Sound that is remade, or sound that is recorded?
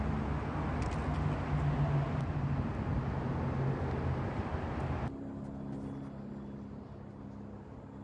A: recorded